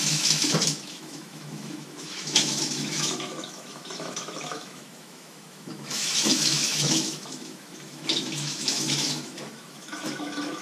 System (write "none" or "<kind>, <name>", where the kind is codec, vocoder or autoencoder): autoencoder, DAC-VAE